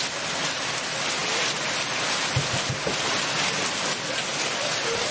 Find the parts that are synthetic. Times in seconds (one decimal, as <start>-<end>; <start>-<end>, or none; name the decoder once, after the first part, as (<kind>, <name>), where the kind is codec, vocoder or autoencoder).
none

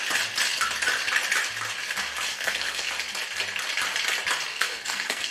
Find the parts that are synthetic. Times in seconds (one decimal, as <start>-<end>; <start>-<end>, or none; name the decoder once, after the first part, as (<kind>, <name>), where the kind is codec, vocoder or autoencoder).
2.3-2.9 (codec, SNAC); 4.5-5.3

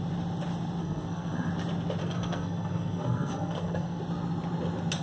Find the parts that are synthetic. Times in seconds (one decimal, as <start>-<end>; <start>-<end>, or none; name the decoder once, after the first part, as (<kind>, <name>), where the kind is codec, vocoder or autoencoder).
0.8-1.5 (codec, SNAC); 2.0-4.0

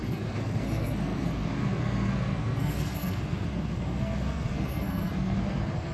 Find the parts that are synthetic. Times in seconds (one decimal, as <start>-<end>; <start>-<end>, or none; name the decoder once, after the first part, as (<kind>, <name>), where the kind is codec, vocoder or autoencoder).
0.0-5.9 (codec, SNAC)

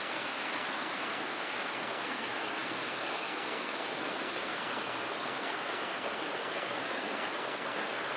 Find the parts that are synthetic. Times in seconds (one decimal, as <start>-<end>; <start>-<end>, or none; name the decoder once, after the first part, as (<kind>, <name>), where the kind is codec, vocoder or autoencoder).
0.0-8.2 (codec, SNAC)

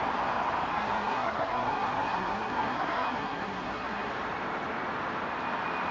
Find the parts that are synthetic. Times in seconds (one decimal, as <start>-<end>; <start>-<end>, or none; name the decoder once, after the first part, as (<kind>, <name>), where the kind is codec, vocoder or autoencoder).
0.7-4.1 (codec, SNAC)

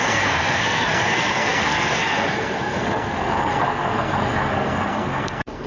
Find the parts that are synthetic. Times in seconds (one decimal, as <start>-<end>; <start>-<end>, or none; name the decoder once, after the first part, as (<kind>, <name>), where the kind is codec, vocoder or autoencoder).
0.0-5.7 (codec, SNAC)

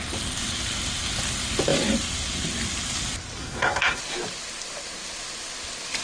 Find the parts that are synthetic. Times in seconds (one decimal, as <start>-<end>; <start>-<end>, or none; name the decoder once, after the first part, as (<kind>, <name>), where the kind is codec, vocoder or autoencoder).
3.4-4.0 (codec, SNAC)